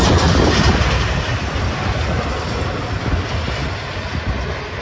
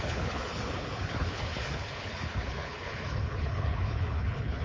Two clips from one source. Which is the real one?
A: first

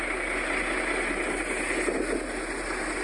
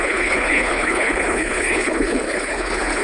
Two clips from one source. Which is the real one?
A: first